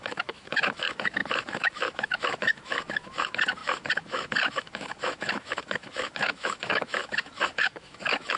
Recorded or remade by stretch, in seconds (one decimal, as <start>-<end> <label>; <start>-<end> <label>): 0.0-8.4 remade

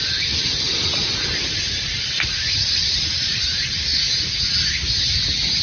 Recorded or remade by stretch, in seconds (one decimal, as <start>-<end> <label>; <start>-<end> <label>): 0.0-2.3 remade; 2.3-5.6 recorded

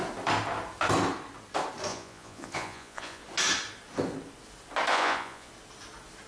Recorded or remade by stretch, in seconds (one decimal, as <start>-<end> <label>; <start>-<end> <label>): 0.0-1.9 recorded; 1.9-3.2 remade; 3.2-4.9 recorded; 4.9-5.5 remade; 5.5-6.3 recorded

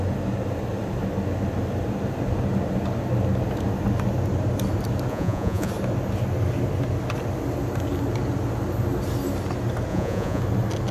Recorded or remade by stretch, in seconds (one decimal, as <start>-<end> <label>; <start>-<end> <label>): 0.0-5.1 recorded; 5.1-5.7 remade; 5.7-9.9 recorded; 9.9-10.4 remade; 10.4-10.9 recorded

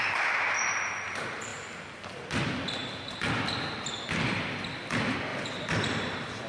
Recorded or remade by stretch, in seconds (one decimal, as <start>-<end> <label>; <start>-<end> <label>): 0.0-1.5 recorded; 1.5-2.0 remade; 2.0-5.3 recorded; 5.3-6.5 remade

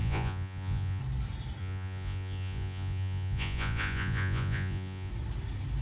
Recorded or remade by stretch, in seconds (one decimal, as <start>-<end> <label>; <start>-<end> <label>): 0.0-1.0 remade; 1.0-1.6 recorded; 1.6-5.1 remade; 5.1-5.8 recorded

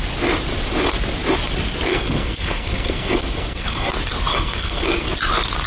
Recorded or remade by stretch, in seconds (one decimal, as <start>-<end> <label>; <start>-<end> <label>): 0.0-1.9 recorded; 1.9-3.9 remade; 3.9-4.3 recorded; 4.3-5.1 remade; 5.1-5.7 recorded

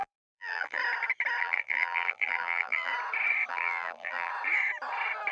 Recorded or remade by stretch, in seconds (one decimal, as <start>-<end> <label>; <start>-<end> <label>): 0.0-0.8 remade; 0.8-1.4 recorded; 1.4-2.9 remade; 2.9-3.5 recorded; 3.5-4.3 remade; 4.3-5.3 recorded